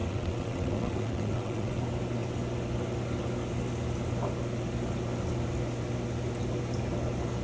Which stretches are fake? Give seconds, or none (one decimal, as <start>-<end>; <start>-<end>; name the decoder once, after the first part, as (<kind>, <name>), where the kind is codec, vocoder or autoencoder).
0.0-1.8 (vocoder, WaveNeXt)